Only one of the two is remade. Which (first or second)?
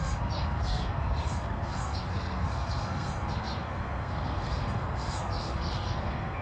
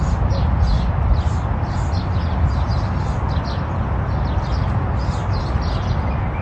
first